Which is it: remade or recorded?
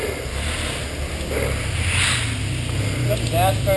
recorded